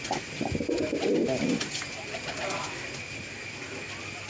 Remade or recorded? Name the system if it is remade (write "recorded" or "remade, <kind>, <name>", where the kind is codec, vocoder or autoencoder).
recorded